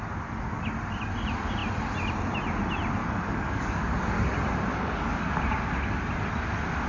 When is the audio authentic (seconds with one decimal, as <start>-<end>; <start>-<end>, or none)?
0.0-3.0; 4.1-4.7; 5.3-6.9